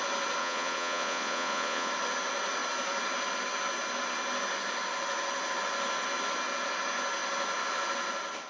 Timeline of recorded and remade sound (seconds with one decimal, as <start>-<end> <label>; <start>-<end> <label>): 0.0-0.4 recorded; 0.4-1.9 remade; 1.9-8.5 recorded